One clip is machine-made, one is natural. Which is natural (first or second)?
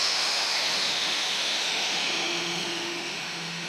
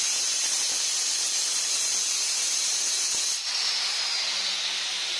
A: second